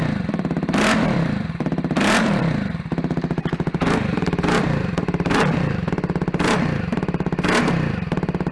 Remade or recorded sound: remade